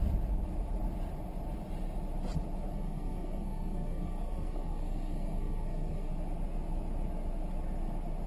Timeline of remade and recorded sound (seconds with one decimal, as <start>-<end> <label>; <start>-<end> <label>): 0.0-2.7 recorded; 2.7-6.1 remade; 6.1-8.3 recorded